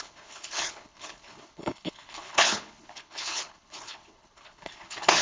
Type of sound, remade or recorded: remade